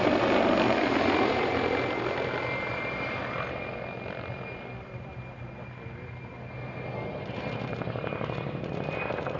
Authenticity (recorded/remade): recorded